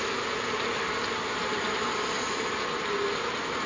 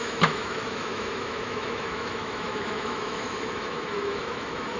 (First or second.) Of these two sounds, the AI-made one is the second